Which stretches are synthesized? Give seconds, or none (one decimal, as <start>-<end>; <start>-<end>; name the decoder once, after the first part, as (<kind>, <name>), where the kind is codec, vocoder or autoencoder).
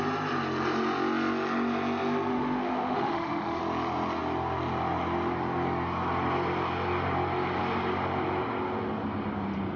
2.3-3.6 (autoencoder, DAC-VAE)